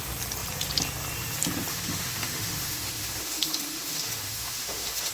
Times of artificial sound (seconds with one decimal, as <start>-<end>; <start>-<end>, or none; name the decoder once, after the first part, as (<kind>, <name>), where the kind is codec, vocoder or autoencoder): 1.7-5.1 (autoencoder, DAC-VAE)